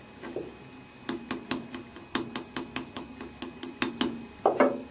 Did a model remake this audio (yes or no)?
no